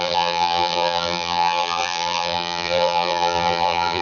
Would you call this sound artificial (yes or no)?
yes